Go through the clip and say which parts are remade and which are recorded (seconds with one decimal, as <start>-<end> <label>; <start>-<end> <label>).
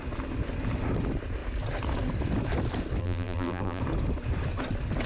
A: 0.0-3.0 recorded; 3.0-3.8 remade; 3.8-5.1 recorded